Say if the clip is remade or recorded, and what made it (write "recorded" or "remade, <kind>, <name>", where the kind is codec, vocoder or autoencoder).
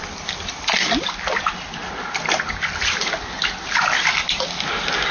recorded